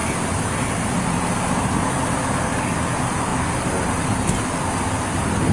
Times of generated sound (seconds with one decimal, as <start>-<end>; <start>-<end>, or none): none